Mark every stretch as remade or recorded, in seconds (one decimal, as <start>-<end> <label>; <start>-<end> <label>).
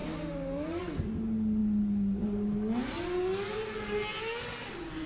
0.0-5.1 recorded